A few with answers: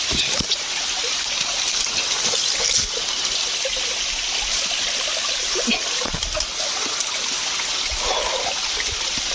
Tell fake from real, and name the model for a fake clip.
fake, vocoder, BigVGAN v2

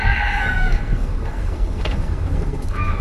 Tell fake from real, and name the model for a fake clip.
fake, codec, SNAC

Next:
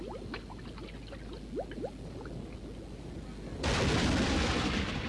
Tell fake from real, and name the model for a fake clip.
real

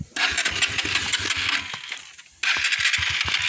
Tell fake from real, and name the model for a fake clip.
real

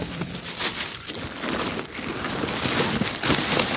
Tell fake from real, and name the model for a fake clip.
fake, vocoder, BigVGAN v2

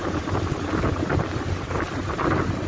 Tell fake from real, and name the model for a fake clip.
real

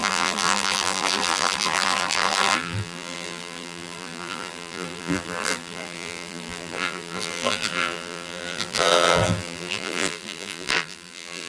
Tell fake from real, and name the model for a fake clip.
fake, vocoder, BigVGAN v2